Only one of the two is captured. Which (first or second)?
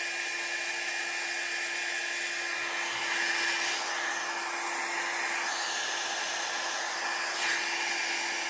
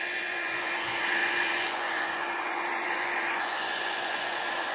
first